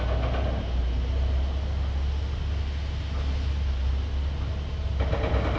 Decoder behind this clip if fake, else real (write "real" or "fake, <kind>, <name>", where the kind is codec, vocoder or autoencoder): real